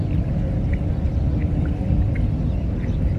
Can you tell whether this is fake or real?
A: real